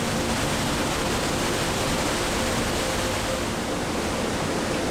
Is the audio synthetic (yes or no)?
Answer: no